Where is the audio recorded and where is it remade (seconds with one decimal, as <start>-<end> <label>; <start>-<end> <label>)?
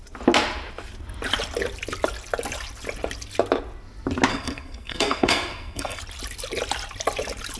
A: 0.0-4.3 recorded; 4.3-6.0 remade; 6.0-7.6 recorded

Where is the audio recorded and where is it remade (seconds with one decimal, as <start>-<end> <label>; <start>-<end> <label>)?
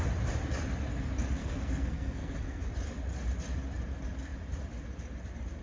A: 0.0-1.4 recorded; 1.4-2.6 remade; 2.6-5.6 recorded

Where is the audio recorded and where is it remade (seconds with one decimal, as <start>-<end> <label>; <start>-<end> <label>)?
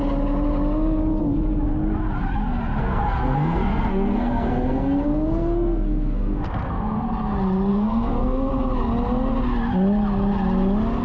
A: 0.0-2.8 recorded; 2.8-7.0 remade; 7.0-7.7 recorded; 7.7-8.5 remade; 8.5-11.0 recorded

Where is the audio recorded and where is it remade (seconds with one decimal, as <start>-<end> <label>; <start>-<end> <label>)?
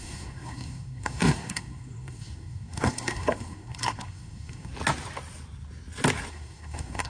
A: 0.0-4.7 remade; 4.7-6.3 recorded; 6.3-7.1 remade